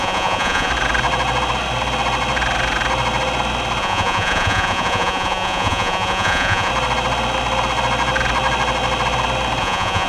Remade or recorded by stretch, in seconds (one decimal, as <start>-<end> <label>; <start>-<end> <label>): 0.0-0.7 remade; 0.7-3.8 recorded; 3.8-6.7 remade; 6.7-9.6 recorded; 9.6-10.1 remade